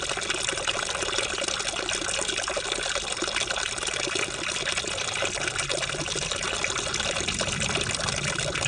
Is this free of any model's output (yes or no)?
yes